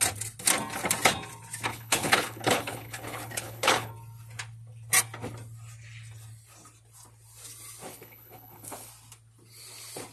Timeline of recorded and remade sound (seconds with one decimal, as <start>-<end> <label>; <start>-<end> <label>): 0.0-1.7 recorded; 1.7-3.9 remade; 3.9-7.9 recorded; 7.9-8.9 remade; 8.9-10.1 recorded